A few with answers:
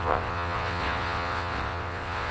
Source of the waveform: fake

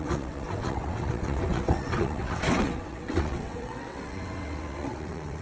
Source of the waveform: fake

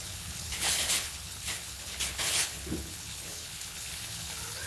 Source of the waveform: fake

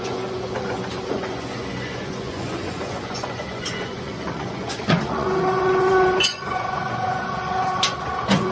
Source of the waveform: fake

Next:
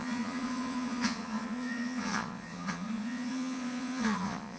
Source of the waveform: fake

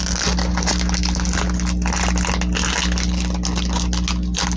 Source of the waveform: real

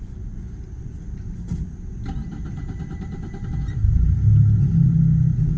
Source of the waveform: real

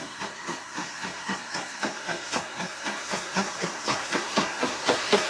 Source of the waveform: fake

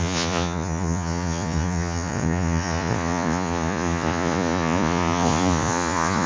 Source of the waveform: fake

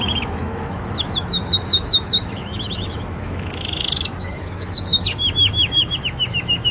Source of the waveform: fake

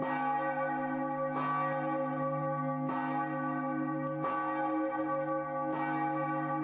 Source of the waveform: real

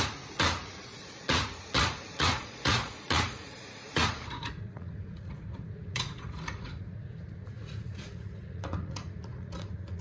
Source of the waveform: fake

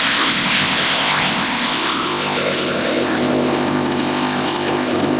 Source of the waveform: fake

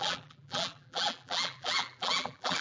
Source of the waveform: fake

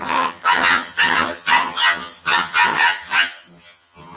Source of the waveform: fake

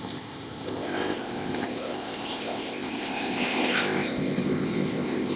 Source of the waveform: fake